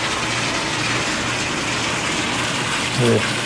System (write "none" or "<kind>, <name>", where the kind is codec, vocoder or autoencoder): none